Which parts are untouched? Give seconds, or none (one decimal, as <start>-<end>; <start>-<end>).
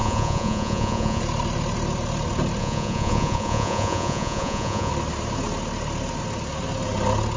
1.2-2.6; 4.9-7.4